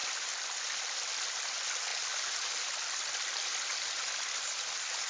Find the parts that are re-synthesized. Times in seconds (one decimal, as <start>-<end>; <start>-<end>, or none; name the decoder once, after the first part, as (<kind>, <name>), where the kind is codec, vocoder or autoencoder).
none